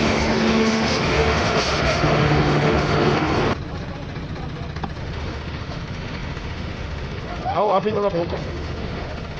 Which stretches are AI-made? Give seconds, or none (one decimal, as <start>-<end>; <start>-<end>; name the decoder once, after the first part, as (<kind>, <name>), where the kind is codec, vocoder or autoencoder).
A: 0.0-3.3 (autoencoder, DAC-VAE); 5.0-9.4